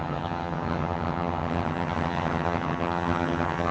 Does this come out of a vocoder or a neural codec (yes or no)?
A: yes